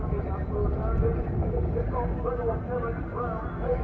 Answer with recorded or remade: recorded